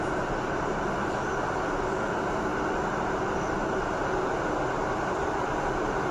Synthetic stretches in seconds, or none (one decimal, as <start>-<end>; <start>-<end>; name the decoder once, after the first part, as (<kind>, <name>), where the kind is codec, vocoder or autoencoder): none